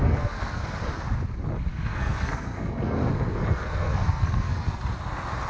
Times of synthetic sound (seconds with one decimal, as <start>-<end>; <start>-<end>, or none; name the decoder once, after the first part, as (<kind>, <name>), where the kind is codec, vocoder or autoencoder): 0.0-0.8 (codec, SNAC); 1.7-4.8